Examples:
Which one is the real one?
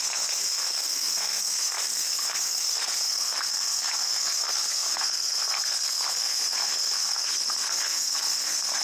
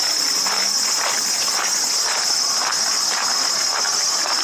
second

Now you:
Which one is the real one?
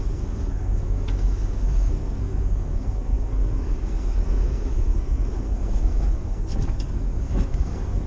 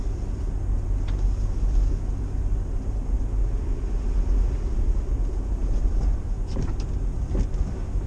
second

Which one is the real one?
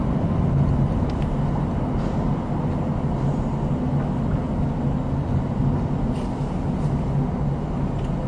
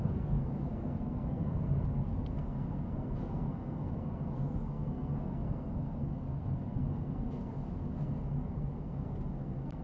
first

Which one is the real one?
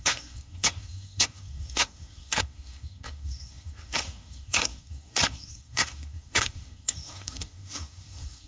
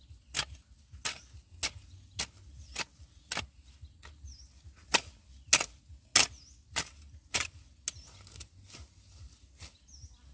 second